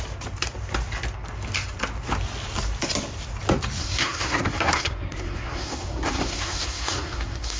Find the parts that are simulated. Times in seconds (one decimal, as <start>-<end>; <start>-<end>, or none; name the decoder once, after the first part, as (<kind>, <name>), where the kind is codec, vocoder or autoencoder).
3.8-7.6 (codec, SNAC)